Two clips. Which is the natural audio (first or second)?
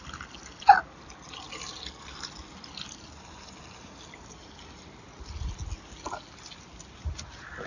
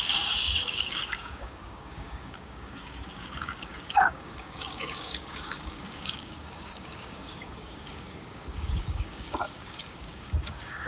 first